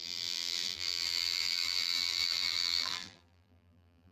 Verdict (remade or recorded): remade